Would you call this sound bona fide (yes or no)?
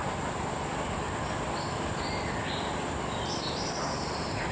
yes